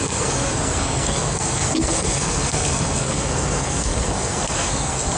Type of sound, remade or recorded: remade